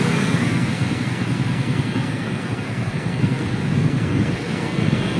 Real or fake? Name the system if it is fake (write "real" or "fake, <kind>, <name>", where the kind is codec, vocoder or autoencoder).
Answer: fake, codec, SNAC